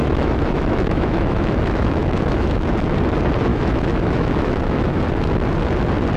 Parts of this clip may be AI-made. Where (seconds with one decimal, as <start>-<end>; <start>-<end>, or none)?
0.0-2.7; 3.5-5.0